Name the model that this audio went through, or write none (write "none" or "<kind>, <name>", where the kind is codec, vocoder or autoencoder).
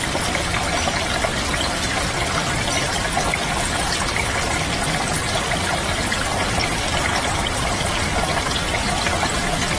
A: none